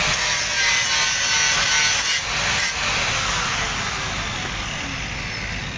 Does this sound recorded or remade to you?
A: recorded